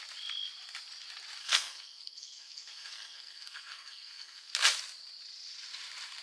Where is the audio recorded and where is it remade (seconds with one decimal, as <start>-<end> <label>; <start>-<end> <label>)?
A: 0.0-1.4 recorded; 1.4-4.5 remade; 4.5-6.2 recorded